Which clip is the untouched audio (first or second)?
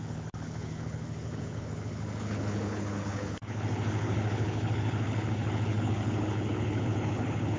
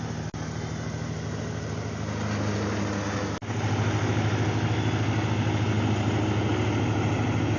second